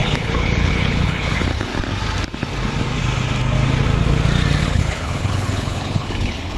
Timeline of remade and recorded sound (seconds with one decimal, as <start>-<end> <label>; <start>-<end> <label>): 0.0-1.7 remade; 1.7-4.6 recorded; 4.6-6.6 remade